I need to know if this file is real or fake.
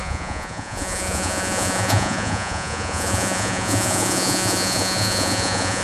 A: fake